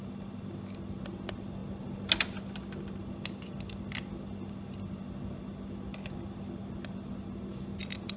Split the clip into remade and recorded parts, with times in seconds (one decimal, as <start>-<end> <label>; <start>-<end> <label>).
0.0-8.2 recorded